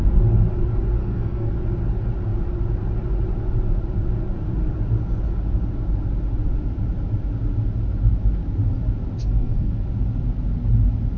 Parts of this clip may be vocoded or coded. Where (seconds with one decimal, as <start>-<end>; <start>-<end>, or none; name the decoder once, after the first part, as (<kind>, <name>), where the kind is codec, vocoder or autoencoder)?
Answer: 1.0-1.5 (codec, SNAC); 9.2-9.7